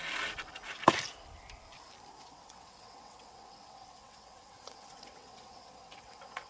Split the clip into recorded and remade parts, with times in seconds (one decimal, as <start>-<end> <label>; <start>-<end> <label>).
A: 0.0-2.3 recorded; 2.3-6.5 remade